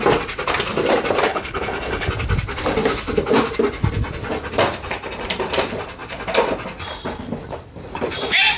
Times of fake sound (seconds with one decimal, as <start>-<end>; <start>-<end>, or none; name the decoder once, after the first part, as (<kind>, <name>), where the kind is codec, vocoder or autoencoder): 1.3-2.1 (codec, HILCodec)